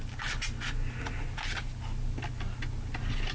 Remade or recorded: recorded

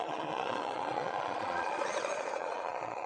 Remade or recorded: remade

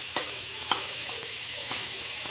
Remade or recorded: remade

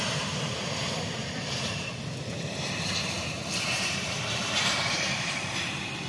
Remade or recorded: remade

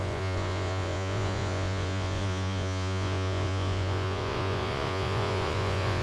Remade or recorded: remade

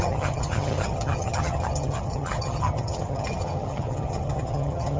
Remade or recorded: remade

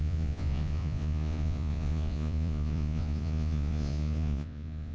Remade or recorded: remade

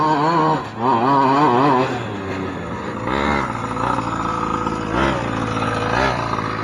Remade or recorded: recorded